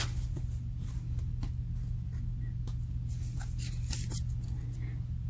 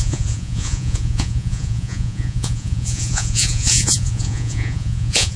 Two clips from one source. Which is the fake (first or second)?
second